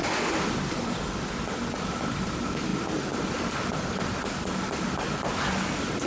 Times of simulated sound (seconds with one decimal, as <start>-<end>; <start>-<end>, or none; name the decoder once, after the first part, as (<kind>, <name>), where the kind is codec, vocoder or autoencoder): 0.0-1.3 (vocoder, BigVGAN v2)